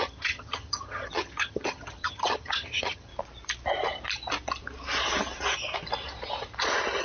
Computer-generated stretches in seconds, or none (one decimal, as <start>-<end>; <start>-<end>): 0.0-3.1